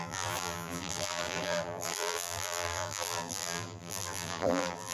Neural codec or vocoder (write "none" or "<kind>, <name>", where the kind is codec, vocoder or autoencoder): vocoder, BigVGAN v2